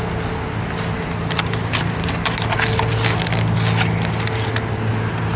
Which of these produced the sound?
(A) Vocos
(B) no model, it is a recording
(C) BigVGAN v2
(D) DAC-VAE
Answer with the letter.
B